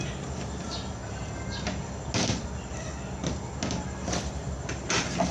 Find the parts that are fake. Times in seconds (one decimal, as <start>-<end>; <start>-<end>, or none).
none